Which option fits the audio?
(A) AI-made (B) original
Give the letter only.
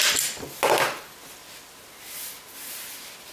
B